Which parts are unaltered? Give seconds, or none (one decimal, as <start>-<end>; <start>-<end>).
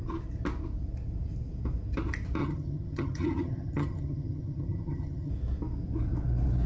0.0-2.4; 5.3-6.7